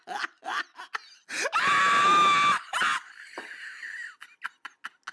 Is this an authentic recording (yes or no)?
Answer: yes